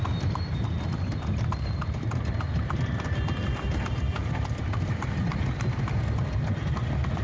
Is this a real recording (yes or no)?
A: yes